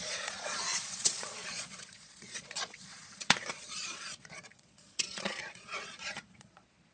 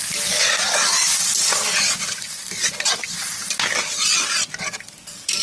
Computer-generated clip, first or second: first